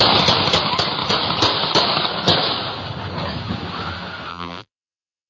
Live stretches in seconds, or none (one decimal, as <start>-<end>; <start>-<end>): 0.0-4.3